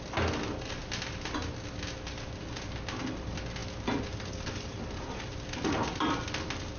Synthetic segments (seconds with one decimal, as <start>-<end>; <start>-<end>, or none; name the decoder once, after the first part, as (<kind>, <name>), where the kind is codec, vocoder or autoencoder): 0.0-0.8 (vocoder, BigVGAN v2); 3.0-3.6; 4.3-6.8